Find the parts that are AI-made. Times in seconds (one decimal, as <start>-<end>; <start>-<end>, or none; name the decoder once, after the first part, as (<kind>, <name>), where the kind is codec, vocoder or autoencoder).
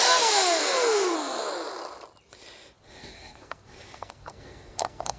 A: 0.0-1.4 (codec, SNAC); 3.0-5.2